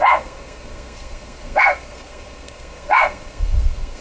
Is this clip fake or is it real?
fake